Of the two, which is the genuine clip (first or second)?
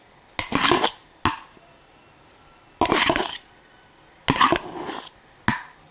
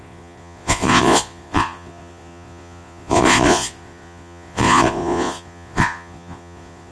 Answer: first